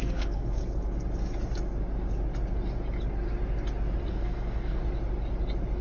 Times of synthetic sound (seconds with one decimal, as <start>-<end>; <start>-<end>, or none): 0.0-0.6; 4.1-4.8